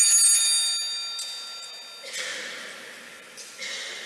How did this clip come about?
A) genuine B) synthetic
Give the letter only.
A